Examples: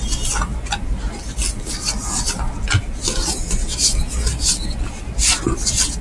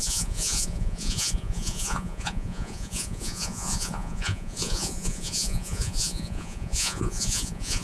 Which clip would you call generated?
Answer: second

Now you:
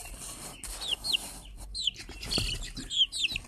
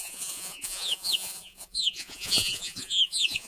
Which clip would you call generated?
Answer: second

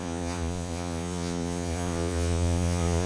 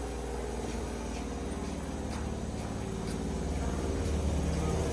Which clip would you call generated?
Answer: first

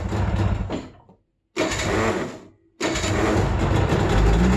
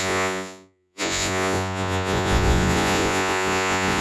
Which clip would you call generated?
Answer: second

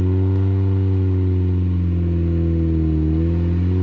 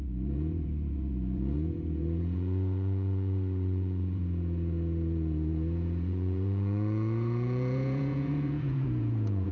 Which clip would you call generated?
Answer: second